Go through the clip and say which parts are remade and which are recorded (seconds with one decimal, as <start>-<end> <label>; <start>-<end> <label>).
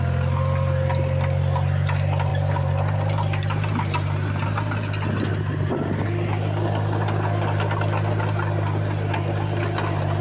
0.0-10.2 recorded